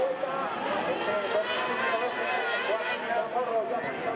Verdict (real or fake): real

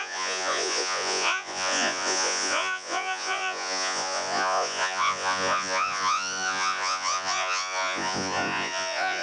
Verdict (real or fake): fake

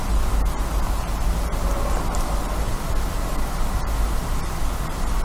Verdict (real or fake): real